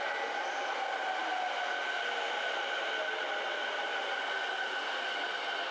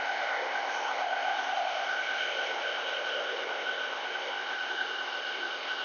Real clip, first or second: first